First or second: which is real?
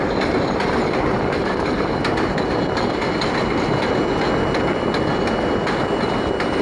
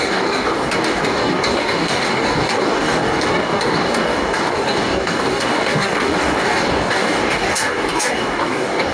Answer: first